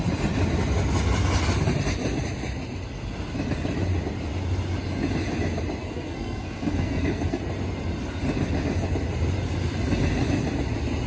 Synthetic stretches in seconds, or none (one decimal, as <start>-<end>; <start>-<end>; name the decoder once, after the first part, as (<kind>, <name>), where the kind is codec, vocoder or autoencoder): 5.8-7.4 (codec, SNAC)